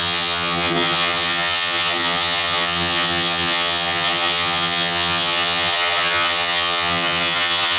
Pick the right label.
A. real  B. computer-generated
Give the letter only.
B